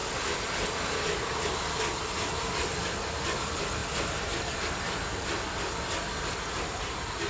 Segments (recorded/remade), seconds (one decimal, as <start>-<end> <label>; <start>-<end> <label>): 0.0-7.3 recorded